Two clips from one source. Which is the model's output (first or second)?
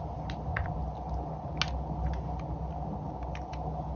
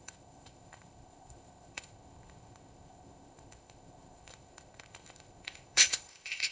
second